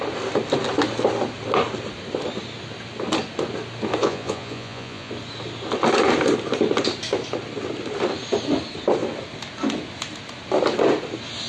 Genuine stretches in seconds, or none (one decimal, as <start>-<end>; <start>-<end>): 0.0-4.0; 5.1-11.5

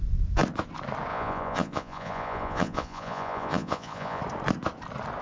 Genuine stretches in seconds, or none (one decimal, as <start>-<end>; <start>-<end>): 0.0-1.1; 4.2-5.2